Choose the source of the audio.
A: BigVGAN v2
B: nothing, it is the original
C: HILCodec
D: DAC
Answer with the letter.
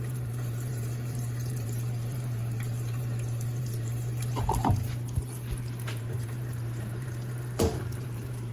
A